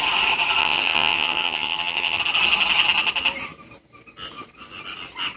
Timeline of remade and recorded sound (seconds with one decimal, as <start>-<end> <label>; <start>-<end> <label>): 0.0-0.6 recorded; 0.6-2.2 remade; 2.2-5.4 recorded